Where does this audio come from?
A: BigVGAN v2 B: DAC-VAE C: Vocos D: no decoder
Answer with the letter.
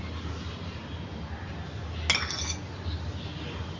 D